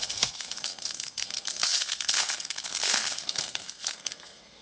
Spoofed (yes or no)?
yes